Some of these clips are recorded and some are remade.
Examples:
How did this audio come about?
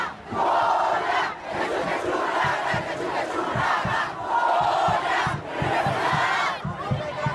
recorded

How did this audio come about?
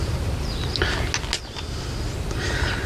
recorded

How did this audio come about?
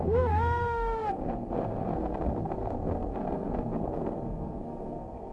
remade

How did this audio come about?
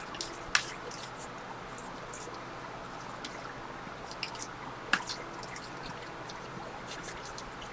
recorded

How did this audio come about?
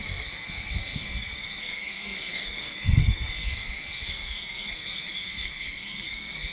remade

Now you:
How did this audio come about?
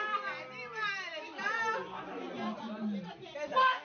recorded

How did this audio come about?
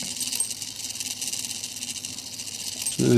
recorded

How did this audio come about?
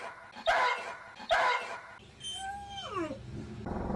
recorded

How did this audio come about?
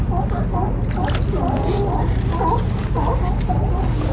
recorded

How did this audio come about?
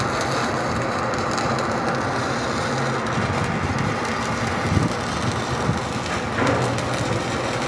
recorded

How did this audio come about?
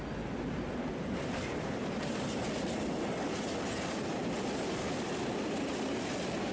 recorded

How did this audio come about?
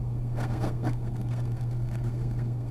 remade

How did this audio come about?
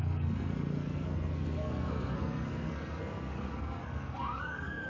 remade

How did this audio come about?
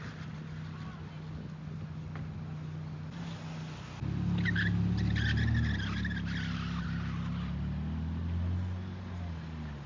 recorded